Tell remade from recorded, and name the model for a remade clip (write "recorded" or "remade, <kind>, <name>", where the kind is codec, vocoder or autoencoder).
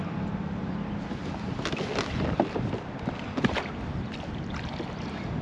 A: recorded